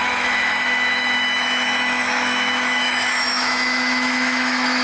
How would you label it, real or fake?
fake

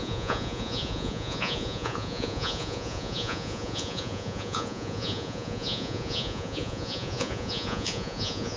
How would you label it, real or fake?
fake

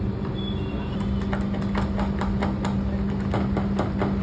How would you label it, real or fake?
real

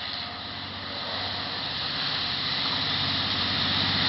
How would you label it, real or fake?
real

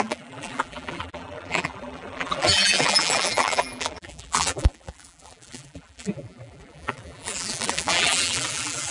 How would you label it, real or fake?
fake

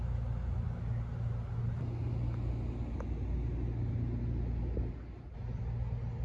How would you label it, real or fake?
real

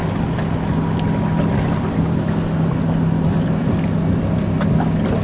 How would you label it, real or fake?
real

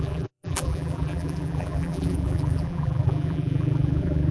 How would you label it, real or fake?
fake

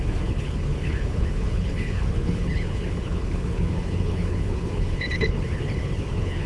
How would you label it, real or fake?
fake